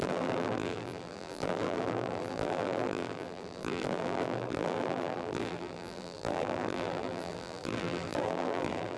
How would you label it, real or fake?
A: fake